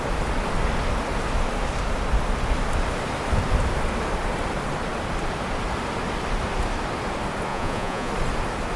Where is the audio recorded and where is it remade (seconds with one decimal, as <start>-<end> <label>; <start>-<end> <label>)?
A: 0.0-7.5 recorded; 7.5-8.1 remade; 8.1-8.8 recorded